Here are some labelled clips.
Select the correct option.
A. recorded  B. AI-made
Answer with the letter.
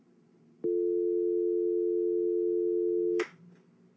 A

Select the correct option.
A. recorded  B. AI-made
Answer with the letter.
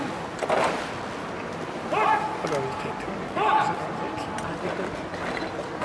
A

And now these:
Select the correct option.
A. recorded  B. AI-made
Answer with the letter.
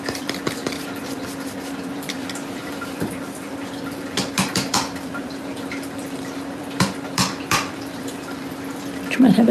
B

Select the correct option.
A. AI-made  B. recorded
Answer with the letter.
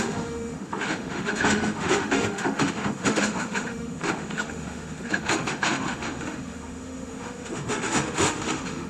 A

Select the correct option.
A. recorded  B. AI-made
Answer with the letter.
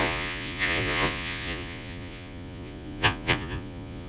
B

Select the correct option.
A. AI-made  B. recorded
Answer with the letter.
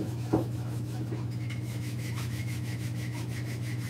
A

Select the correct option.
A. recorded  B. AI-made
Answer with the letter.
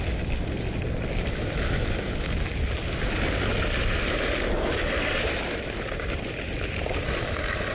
A